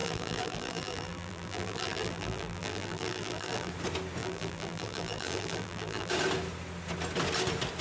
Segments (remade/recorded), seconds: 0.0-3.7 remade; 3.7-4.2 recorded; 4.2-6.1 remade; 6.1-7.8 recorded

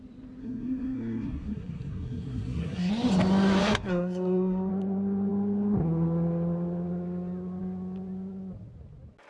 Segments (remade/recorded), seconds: 0.0-0.4 recorded; 0.4-2.9 remade; 2.9-3.6 recorded; 3.6-4.7 remade; 4.7-9.3 recorded